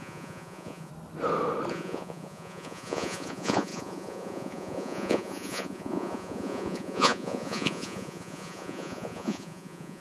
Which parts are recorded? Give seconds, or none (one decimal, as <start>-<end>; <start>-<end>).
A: 0.9-1.7